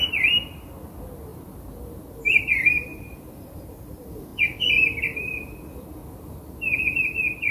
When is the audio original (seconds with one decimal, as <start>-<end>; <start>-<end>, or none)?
0.0-1.3; 2.2-2.9; 3.6-7.5